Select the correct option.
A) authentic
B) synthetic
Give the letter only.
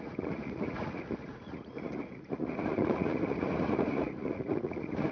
B